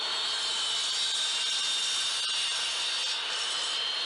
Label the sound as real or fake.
real